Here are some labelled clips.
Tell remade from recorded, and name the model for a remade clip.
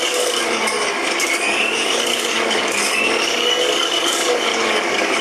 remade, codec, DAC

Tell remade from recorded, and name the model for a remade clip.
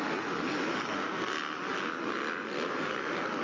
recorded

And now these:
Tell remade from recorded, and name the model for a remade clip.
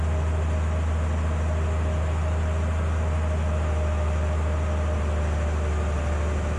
recorded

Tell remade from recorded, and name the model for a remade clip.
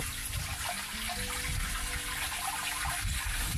recorded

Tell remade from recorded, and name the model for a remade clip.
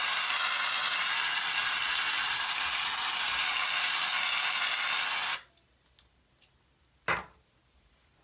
recorded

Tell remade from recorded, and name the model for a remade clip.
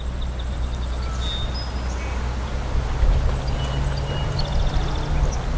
recorded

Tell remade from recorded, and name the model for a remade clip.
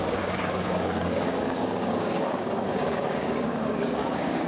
remade, codec, DAC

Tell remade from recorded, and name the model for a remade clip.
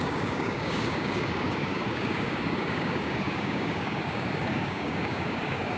remade, codec, DAC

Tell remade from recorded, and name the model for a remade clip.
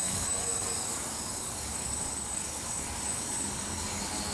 remade, codec, DAC